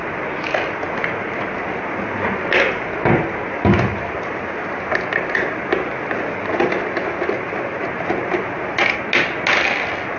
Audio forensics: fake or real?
real